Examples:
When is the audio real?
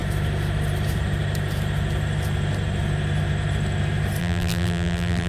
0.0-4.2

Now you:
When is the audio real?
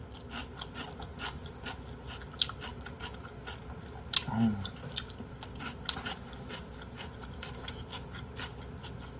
0.0-9.2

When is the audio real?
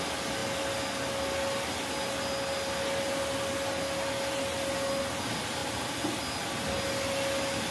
0.0-5.6; 6.2-7.7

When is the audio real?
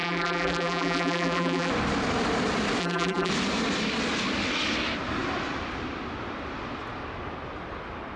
1.7-2.8; 3.3-8.2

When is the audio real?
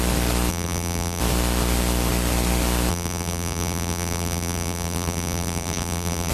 0.0-0.5; 1.2-2.9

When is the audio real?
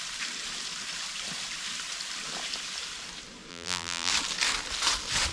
0.0-3.5; 4.1-5.3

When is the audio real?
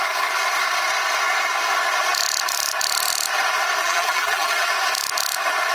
0.0-3.8; 4.7-5.7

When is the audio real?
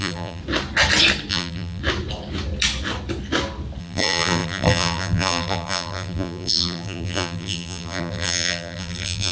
0.4-1.3; 1.8-3.8